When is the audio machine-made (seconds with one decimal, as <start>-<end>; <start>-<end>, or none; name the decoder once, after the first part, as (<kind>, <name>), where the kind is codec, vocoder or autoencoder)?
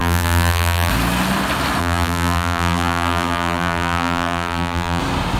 0.0-0.9 (vocoder, BigVGAN v2); 1.8-5.0